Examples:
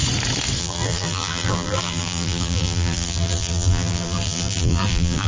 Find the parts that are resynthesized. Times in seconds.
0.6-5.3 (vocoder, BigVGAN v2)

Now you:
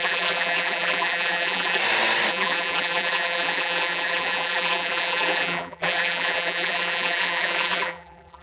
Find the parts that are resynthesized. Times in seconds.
0.0-1.8 (vocoder, BigVGAN v2); 2.3-8.4

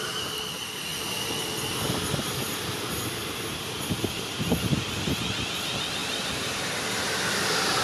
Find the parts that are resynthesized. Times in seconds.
0.9-4.5 (vocoder, BigVGAN v2); 6.0-7.8

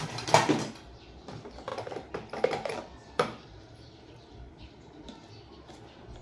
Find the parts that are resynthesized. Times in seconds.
1.7-5.4 (vocoder, BigVGAN v2)

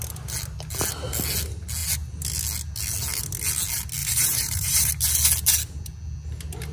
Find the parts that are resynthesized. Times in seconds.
4.0-4.9 (vocoder, BigVGAN v2)

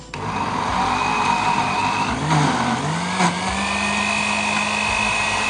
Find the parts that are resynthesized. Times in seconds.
0.0-1.8 (vocoder, BigVGAN v2); 5.1-5.5

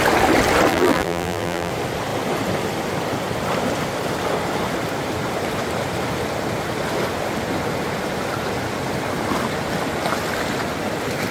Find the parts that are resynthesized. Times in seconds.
0.7-1.7 (vocoder, BigVGAN v2)

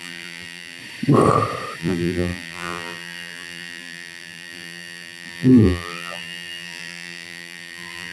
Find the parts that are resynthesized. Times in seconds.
0.0-0.8 (vocoder, BigVGAN v2); 1.8-8.1